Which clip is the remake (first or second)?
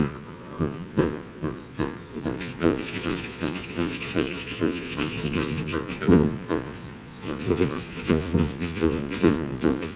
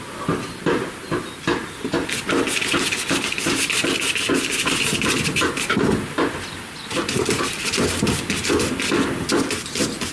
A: first